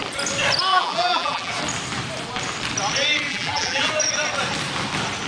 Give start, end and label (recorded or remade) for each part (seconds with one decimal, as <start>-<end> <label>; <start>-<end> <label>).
0.0-0.7 recorded; 0.7-1.5 remade; 1.5-3.3 recorded; 3.3-3.9 remade; 3.9-5.3 recorded